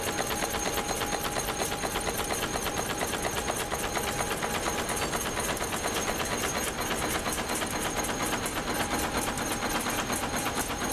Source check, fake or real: real